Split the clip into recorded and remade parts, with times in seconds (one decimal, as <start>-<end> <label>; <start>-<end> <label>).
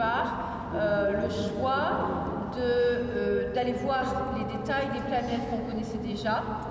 0.0-5.3 recorded; 5.3-5.8 remade; 5.8-6.7 recorded